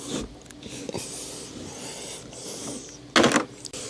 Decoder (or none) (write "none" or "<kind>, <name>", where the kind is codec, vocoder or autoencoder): none